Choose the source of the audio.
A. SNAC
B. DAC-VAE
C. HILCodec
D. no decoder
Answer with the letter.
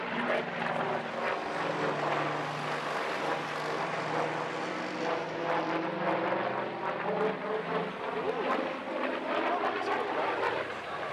D